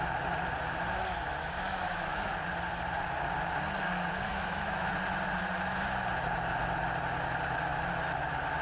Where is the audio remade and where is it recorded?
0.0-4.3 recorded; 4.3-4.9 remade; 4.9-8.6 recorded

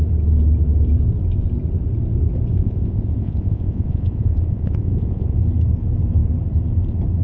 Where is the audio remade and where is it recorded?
0.0-2.5 recorded; 2.5-5.4 remade; 5.4-7.2 recorded

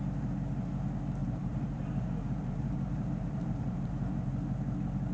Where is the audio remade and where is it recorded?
0.0-1.2 recorded; 1.2-4.3 remade; 4.3-5.1 recorded

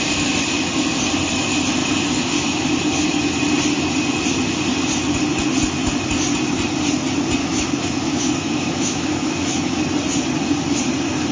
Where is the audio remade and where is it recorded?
0.0-7.4 recorded; 7.4-9.8 remade; 9.8-11.3 recorded